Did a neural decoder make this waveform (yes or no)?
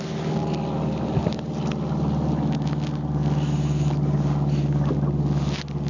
no